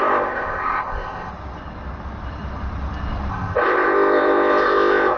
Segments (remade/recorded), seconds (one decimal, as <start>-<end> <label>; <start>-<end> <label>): 0.0-1.3 remade; 1.3-3.3 recorded; 3.3-5.2 remade